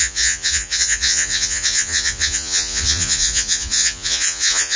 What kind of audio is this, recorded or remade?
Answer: remade